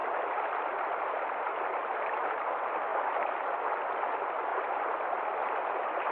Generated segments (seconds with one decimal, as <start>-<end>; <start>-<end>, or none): 4.5-6.1